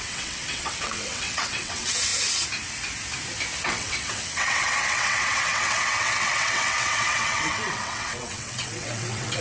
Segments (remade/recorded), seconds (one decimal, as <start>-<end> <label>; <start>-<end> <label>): 0.0-2.1 remade; 2.1-3.6 recorded; 3.6-9.4 remade

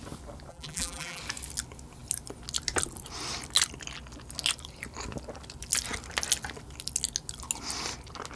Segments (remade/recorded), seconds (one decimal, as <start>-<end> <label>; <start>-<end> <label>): 0.0-0.5 recorded; 0.5-1.2 remade; 1.2-8.4 recorded

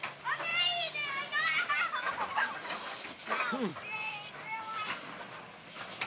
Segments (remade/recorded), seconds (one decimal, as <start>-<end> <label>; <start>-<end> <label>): 0.0-6.1 recorded

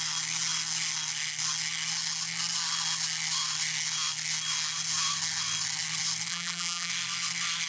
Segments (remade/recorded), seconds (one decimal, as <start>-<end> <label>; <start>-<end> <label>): 0.0-6.3 recorded; 6.3-6.9 remade; 6.9-7.7 recorded

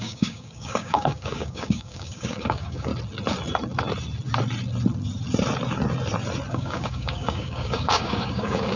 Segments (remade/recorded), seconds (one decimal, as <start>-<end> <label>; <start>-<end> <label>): 0.0-2.9 remade; 2.9-6.5 recorded; 6.5-8.8 remade